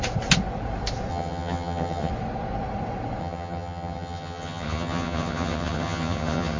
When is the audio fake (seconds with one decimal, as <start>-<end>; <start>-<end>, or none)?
1.1-2.1; 3.2-6.6